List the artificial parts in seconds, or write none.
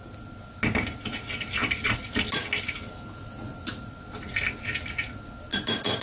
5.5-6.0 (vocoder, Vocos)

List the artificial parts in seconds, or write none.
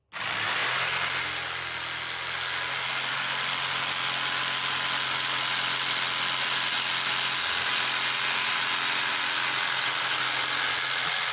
none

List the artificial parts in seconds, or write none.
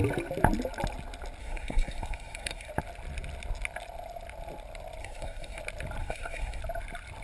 1.4-2.7 (codec, SNAC); 5.0-5.6; 6.0-6.6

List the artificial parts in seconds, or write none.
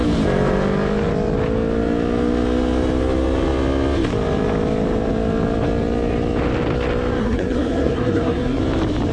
7.2-8.6 (codec, SNAC)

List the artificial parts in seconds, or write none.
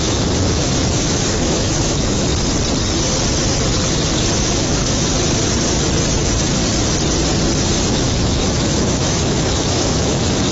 0.0-2.3 (autoencoder, DAC-VAE); 4.4-5.1; 6.1-6.6; 8.0-10.5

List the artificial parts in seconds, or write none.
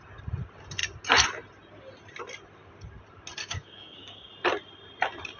3.4-4.3 (codec, DAC)